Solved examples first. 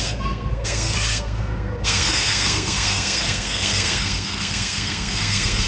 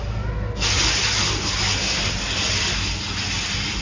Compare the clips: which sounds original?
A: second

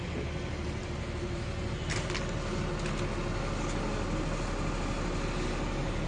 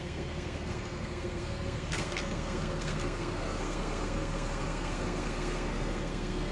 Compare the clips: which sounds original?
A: first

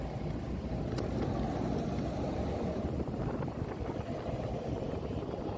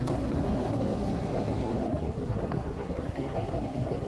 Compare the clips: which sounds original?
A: first